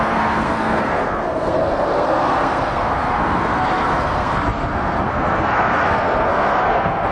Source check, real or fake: fake